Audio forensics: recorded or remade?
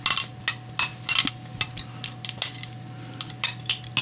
recorded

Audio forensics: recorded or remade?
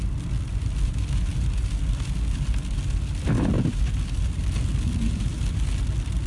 recorded